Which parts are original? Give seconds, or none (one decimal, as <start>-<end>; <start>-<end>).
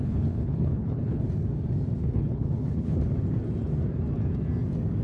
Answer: 1.2-2.0; 3.0-5.0